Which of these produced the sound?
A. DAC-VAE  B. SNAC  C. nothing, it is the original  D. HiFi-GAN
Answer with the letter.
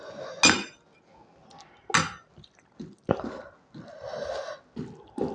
C